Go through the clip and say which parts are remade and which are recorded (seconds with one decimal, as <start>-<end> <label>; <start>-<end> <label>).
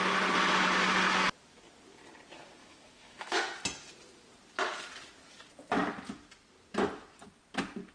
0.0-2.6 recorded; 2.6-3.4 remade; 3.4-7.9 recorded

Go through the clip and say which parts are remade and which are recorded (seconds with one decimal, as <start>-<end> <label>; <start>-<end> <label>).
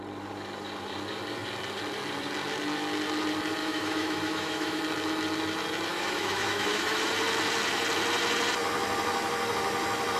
0.0-3.6 recorded; 3.6-4.8 remade; 4.8-5.9 recorded; 5.9-7.1 remade; 7.1-10.2 recorded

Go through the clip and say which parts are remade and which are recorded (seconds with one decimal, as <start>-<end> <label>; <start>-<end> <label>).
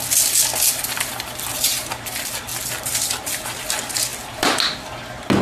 0.0-1.5 recorded; 1.5-2.1 remade; 2.1-2.5 recorded; 2.5-3.6 remade; 3.6-5.4 recorded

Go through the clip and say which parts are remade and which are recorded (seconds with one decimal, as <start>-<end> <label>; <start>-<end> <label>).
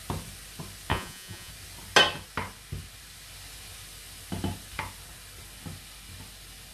0.0-0.9 recorded; 0.9-1.5 remade; 1.5-6.7 recorded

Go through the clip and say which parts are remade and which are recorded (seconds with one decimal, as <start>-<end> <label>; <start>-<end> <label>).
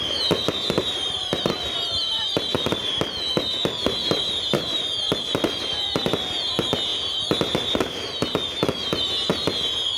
0.0-0.8 recorded; 0.8-2.7 remade; 2.7-4.0 recorded; 4.0-4.8 remade; 4.8-10.0 recorded